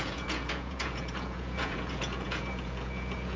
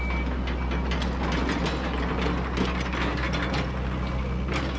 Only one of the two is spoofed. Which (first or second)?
first